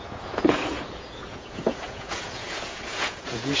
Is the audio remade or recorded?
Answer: remade